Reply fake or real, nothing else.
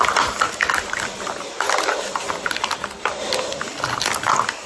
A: real